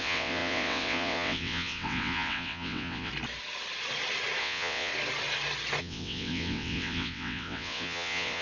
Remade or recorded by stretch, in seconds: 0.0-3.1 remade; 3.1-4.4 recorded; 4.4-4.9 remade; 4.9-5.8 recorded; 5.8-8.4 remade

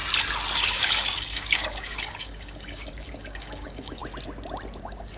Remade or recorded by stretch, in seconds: 0.0-0.7 recorded; 0.7-4.0 remade; 4.0-4.8 recorded; 4.8-5.2 remade

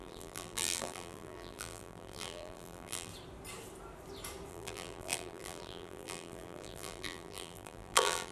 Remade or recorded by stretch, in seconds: 0.0-3.1 remade; 3.1-4.5 recorded; 4.5-8.3 remade

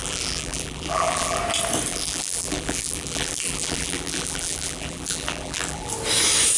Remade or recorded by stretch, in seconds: 0.0-1.4 remade; 1.4-1.9 recorded; 1.9-5.9 remade; 5.9-6.6 recorded